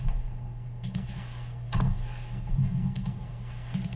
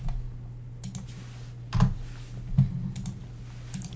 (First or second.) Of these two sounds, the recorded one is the second